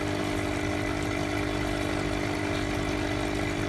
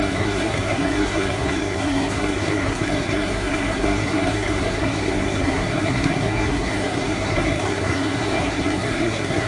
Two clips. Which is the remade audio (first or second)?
second